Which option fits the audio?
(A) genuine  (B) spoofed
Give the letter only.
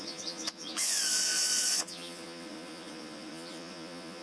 B